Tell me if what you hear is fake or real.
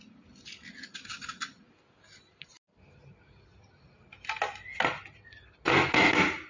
real